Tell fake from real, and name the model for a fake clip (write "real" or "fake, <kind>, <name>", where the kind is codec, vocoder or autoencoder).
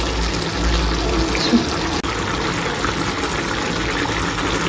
real